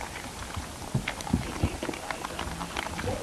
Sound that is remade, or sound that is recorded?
recorded